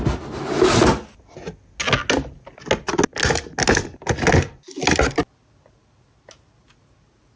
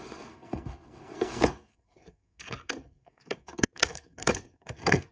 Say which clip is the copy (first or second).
second